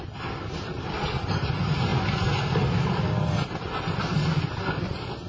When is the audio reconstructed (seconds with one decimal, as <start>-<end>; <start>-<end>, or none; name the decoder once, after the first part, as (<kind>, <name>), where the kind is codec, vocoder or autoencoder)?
none